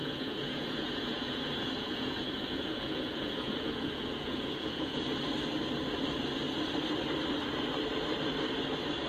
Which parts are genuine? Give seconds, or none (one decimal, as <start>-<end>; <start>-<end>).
5.0-9.1